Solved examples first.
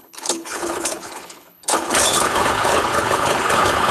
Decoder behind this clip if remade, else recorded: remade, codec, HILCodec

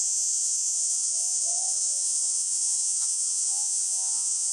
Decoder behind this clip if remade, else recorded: remade, vocoder, Vocos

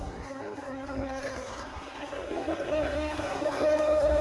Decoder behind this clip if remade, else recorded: remade, codec, SNAC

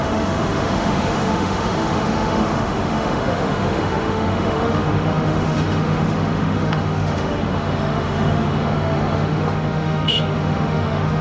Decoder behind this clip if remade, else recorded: remade, autoencoder, DAC-VAE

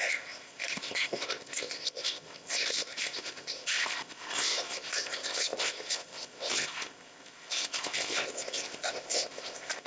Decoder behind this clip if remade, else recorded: remade, codec, ZipCodec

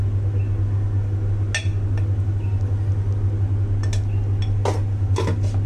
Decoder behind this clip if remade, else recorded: recorded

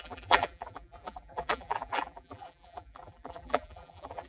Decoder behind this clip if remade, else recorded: remade, vocoder, BigVGAN v2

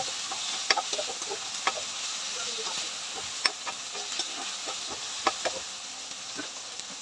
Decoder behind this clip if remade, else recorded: recorded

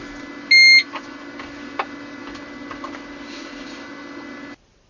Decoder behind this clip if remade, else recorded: recorded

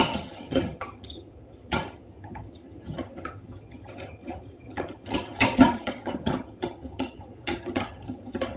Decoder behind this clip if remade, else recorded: remade, vocoder, HiFi-GAN